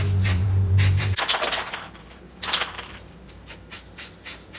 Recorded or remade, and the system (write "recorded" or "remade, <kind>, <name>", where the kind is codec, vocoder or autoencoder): remade, vocoder, BigVGAN v2